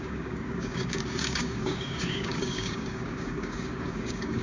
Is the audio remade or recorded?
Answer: remade